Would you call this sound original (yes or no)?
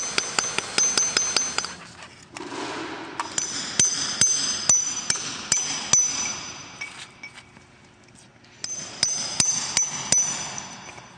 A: yes